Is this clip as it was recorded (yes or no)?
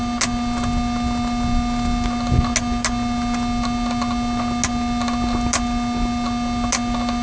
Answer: yes